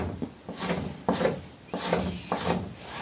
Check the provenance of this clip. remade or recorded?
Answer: recorded